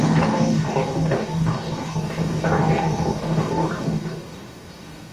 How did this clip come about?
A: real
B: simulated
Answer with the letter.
B